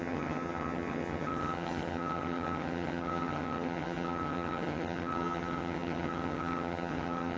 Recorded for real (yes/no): no